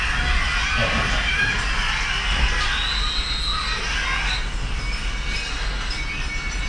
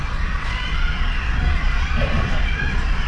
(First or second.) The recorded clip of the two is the first